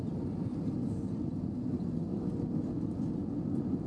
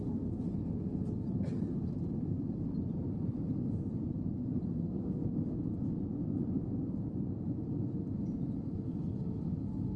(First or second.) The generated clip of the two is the second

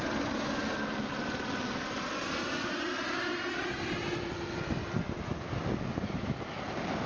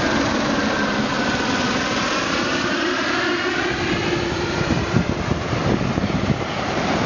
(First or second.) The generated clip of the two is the second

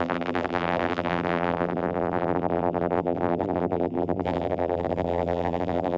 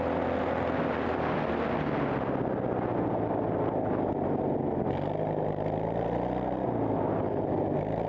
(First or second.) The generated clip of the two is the first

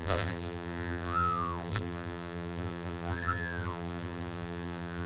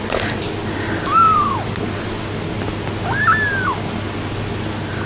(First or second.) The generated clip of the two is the first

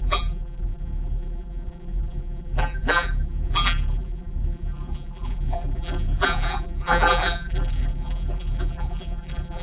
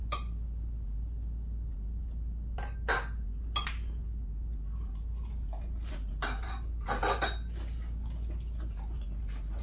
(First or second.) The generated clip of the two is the first